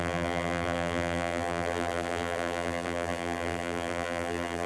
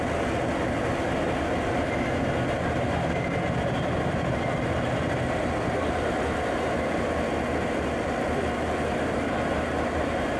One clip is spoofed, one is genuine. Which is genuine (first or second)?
second